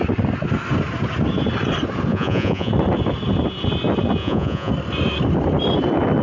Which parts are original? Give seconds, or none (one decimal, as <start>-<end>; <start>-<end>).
0.0-2.1; 2.7-4.2; 4.7-6.2